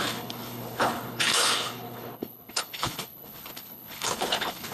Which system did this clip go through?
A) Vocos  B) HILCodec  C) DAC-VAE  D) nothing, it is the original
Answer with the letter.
B